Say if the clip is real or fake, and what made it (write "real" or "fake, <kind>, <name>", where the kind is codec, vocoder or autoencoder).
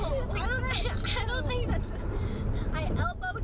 real